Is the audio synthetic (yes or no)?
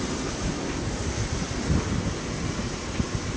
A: no